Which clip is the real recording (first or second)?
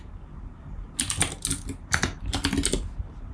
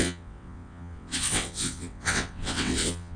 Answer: first